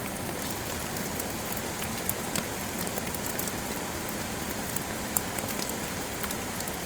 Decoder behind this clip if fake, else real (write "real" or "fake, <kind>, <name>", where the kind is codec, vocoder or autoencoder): real